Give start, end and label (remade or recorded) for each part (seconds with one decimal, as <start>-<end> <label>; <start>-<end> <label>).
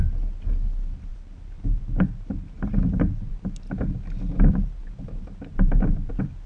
0.0-1.1 recorded; 1.1-3.3 remade; 3.3-4.8 recorded; 4.8-6.1 remade; 6.1-6.5 recorded